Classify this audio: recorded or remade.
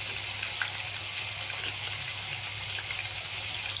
recorded